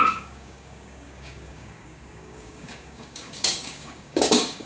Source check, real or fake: fake